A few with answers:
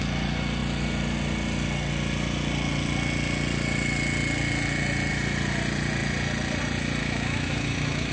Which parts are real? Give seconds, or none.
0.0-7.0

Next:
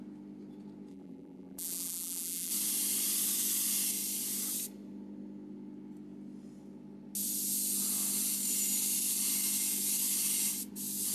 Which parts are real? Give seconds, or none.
0.0-0.9; 2.5-11.1

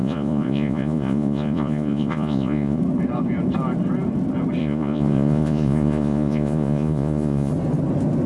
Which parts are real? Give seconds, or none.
2.8-4.6; 7.5-8.3

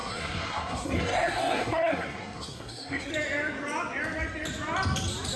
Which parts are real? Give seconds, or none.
3.1-5.4

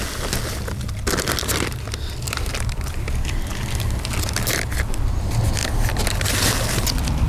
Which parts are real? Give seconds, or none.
0.0-7.3

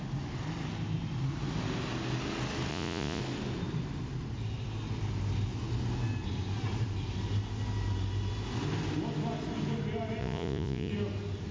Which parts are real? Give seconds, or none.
0.0-2.7; 3.2-10.2; 10.9-11.5

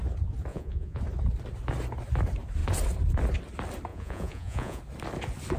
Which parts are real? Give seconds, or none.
0.0-0.5; 1.0-3.9; 4.8-5.6